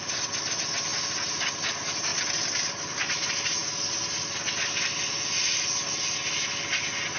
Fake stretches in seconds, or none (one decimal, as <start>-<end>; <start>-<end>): none